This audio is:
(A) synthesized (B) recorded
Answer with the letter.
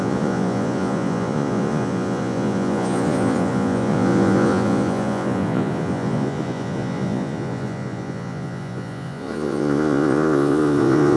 A